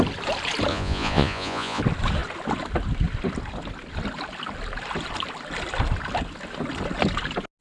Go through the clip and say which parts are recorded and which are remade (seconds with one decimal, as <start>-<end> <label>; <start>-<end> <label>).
0.0-0.7 recorded; 0.7-1.8 remade; 1.8-7.6 recorded